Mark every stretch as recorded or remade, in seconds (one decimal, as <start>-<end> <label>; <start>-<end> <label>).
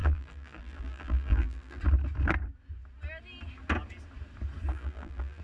0.0-1.8 remade; 1.8-4.7 recorded; 4.7-5.4 remade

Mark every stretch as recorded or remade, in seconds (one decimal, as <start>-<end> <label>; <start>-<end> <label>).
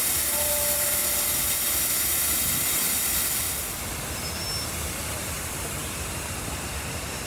0.0-1.0 remade; 1.0-4.5 recorded; 4.5-7.3 remade